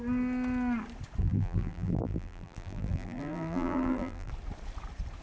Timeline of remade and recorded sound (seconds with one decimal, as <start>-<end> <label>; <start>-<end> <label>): 0.0-1.2 recorded; 1.2-4.3 remade; 4.3-5.2 recorded